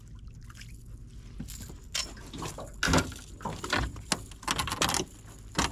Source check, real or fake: real